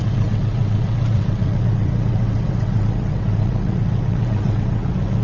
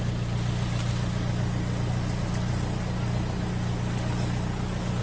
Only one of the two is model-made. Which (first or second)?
first